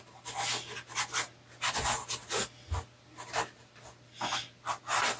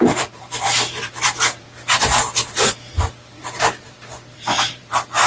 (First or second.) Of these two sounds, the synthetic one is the second